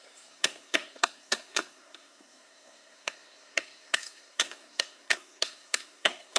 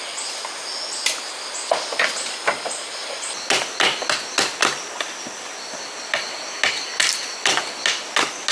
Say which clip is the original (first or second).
second